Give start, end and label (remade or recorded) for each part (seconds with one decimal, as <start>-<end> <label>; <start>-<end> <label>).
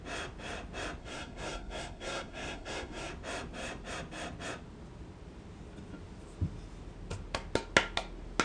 0.0-1.0 recorded; 1.0-3.1 remade; 3.1-8.4 recorded